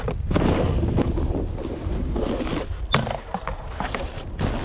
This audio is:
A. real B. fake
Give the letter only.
A